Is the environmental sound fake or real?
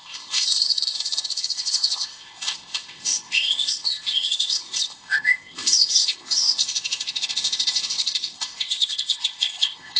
fake